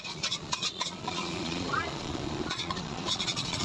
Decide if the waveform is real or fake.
fake